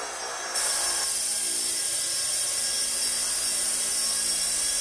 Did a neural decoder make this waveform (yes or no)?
no